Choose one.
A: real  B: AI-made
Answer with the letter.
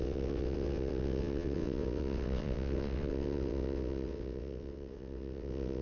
B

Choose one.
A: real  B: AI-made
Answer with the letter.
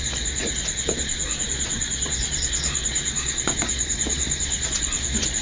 B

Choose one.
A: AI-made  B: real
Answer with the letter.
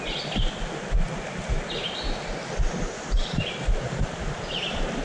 B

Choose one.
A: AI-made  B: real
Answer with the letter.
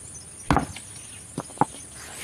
B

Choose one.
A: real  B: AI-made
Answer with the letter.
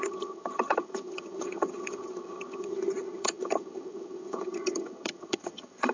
B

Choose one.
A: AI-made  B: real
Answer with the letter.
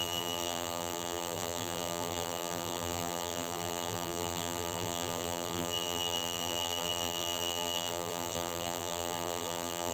A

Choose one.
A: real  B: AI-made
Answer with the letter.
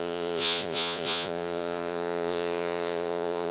B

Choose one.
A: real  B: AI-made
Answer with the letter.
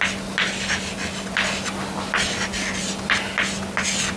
A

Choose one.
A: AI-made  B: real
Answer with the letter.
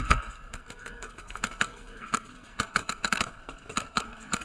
A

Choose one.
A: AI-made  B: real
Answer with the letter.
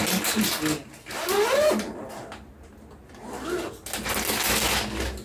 B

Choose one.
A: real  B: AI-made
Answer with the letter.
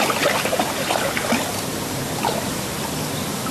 A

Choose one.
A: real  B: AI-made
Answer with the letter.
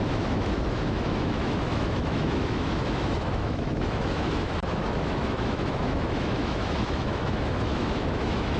B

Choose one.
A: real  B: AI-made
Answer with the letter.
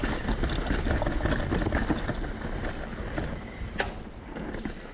A